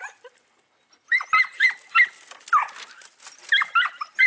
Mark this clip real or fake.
real